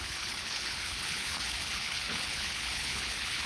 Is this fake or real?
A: fake